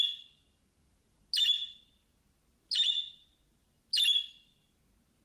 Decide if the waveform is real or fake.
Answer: real